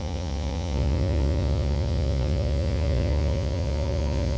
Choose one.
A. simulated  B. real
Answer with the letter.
A